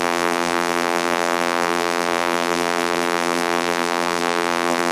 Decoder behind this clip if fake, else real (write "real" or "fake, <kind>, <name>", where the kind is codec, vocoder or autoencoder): fake, vocoder, BigVGAN v2